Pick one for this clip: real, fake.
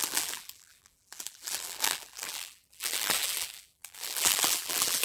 fake